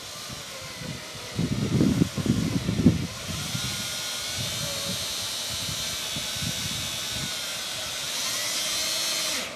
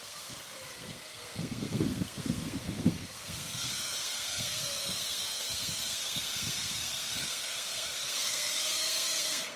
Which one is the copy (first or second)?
second